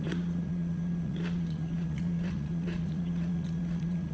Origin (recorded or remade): remade